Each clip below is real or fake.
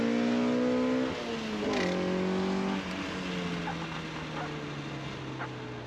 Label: real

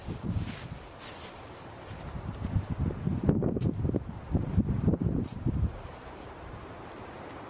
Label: fake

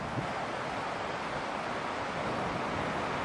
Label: real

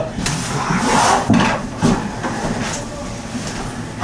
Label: real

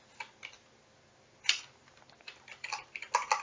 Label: real